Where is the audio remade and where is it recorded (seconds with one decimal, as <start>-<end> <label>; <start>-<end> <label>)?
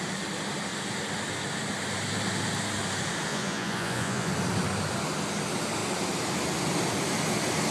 0.0-3.3 recorded; 3.3-4.3 remade; 4.3-7.7 recorded